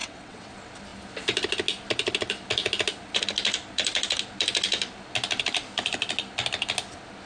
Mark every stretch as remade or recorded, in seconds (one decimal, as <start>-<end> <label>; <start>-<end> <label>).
0.0-0.5 remade; 0.5-7.3 recorded